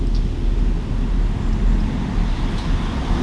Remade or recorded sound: recorded